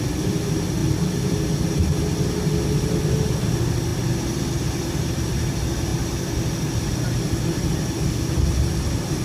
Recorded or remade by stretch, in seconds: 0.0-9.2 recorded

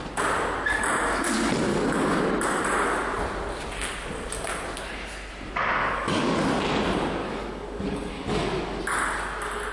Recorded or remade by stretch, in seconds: 0.0-1.7 recorded; 1.7-2.3 remade; 2.3-5.8 recorded; 5.8-6.5 remade; 6.5-7.2 recorded; 7.2-8.8 remade; 8.8-9.7 recorded

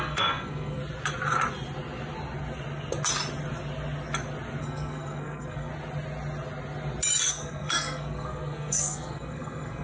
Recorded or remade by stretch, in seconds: 0.0-0.8 remade; 0.8-4.6 recorded; 4.6-5.7 remade; 5.7-7.3 recorded; 7.3-9.8 remade

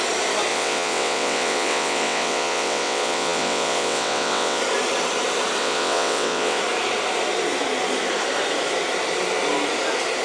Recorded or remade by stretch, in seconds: 0.0-0.5 recorded; 0.5-4.6 remade; 4.6-5.6 recorded; 5.6-6.6 remade; 6.6-10.2 recorded

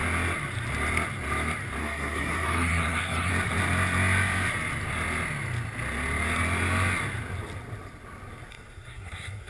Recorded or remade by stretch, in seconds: 0.0-1.8 recorded; 1.8-3.3 remade; 3.3-8.5 recorded; 8.5-9.5 remade

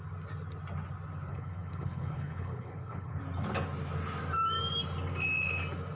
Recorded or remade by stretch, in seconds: 0.0-1.3 recorded; 1.3-3.2 remade; 3.2-6.0 recorded

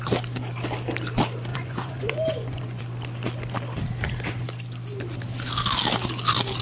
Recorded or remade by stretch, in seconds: 0.0-1.5 recorded; 1.5-2.8 remade; 2.8-6.6 recorded